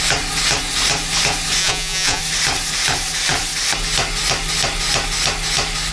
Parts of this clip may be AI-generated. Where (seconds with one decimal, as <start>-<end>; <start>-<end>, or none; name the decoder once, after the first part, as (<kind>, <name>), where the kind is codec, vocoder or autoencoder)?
1.6-2.2 (vocoder, Vocos)